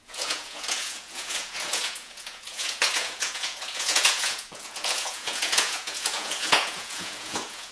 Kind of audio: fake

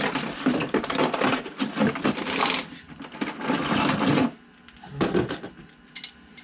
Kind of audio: real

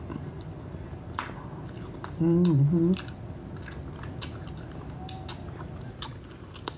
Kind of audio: real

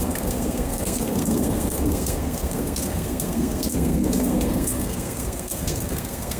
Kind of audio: fake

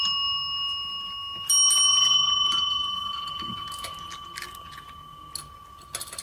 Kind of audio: real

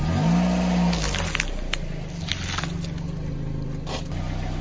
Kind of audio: real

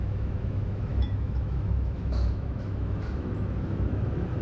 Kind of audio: fake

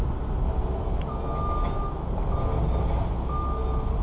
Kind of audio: real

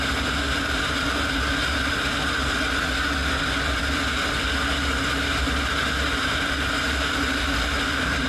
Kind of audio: real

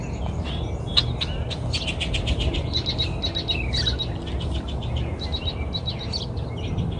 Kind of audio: real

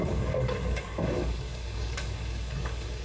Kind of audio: fake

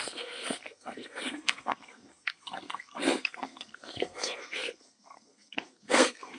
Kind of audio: fake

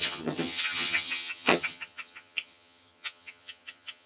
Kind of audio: fake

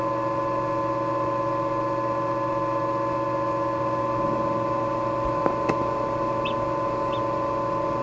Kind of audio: real